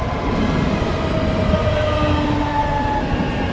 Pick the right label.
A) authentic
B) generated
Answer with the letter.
A